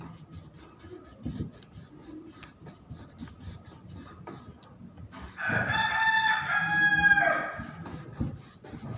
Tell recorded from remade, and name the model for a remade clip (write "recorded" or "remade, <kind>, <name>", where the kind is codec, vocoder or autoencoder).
recorded